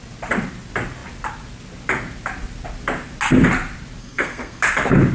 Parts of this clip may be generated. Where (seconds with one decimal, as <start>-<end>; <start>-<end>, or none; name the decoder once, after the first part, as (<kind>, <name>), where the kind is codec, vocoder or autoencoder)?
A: 4.0-4.6 (codec, SNAC)